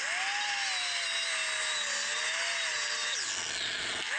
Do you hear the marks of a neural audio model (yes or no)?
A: no